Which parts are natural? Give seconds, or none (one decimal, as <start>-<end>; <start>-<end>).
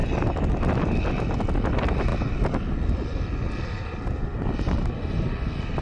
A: 0.0-5.8